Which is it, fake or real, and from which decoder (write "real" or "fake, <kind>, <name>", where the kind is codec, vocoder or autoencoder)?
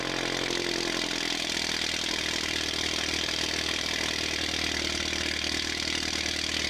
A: real